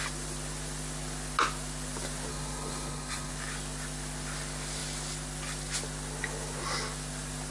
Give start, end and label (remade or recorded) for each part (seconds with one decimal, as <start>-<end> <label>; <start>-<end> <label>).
0.0-2.3 recorded; 2.3-3.3 remade; 3.3-7.5 recorded